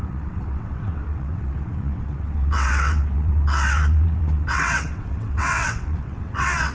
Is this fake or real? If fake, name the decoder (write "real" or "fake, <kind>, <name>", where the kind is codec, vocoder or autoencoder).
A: fake, vocoder, WaveNeXt